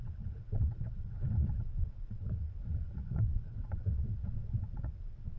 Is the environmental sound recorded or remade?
remade